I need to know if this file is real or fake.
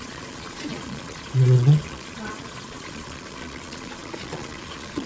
fake